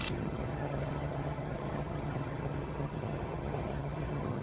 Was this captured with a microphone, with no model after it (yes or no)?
no